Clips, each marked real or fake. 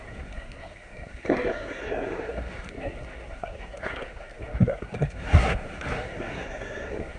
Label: fake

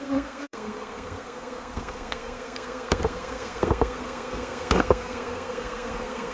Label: fake